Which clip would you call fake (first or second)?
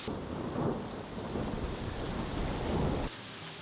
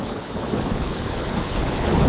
second